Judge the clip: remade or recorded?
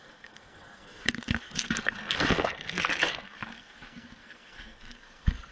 remade